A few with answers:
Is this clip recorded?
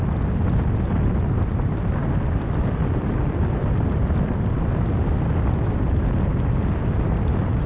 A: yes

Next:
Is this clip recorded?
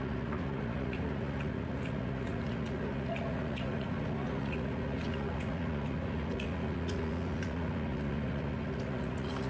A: no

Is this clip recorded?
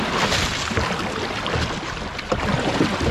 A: yes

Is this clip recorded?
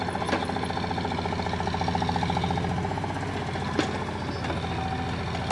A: yes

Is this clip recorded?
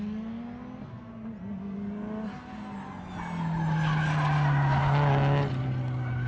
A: yes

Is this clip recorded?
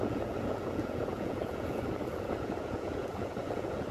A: no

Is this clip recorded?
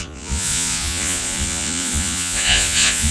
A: no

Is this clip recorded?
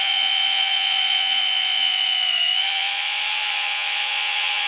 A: no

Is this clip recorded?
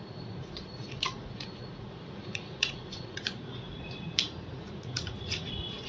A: no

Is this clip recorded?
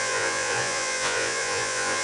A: no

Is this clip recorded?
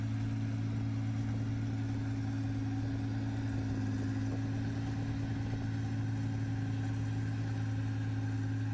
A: yes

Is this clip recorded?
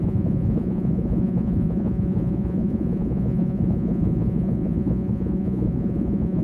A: no